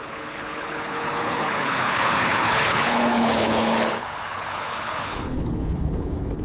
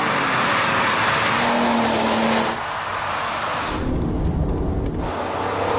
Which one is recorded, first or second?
second